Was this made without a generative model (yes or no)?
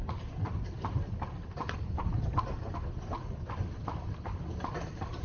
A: yes